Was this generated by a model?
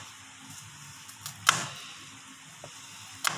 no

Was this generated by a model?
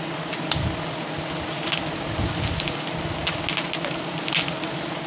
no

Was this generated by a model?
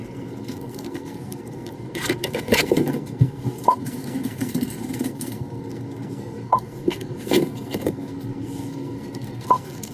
yes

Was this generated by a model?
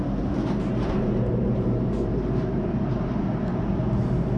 yes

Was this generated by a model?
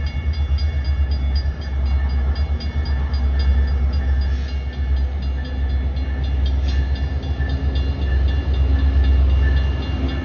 no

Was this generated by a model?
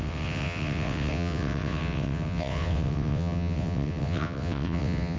yes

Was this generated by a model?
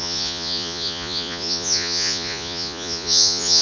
yes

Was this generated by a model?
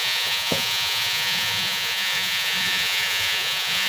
yes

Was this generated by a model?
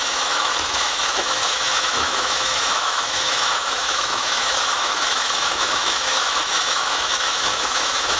yes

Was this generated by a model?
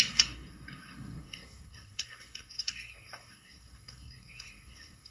yes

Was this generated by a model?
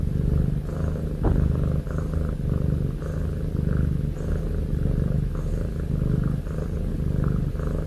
no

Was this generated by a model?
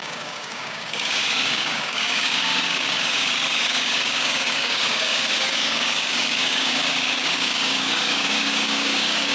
yes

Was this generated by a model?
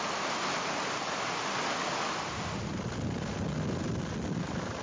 no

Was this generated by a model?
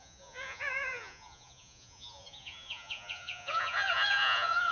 yes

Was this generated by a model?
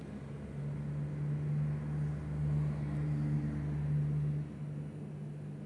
no